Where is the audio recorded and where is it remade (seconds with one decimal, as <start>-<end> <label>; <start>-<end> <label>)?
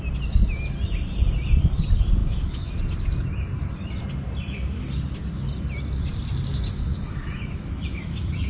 0.0-2.2 recorded; 2.2-2.7 remade; 2.7-6.7 recorded; 6.7-8.5 remade